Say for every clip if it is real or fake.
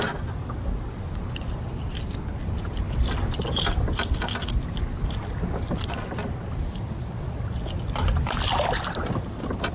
real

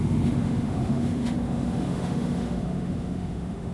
fake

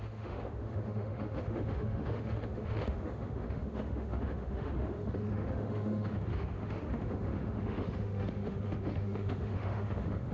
fake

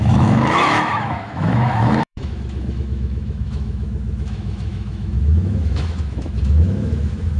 fake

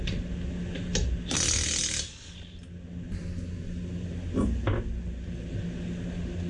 real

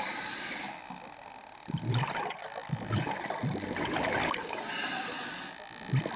real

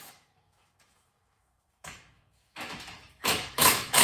fake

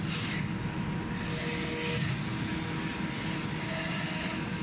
real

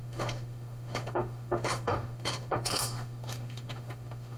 fake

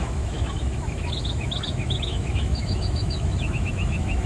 fake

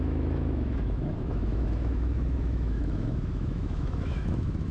fake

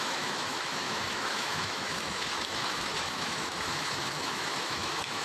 fake